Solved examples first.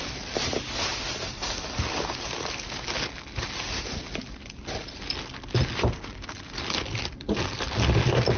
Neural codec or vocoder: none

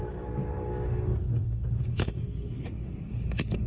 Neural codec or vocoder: codec, DAC